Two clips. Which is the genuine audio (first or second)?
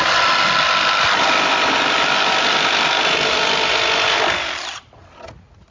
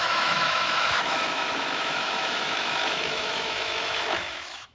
first